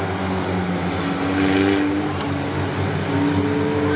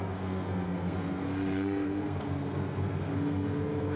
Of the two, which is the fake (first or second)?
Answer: second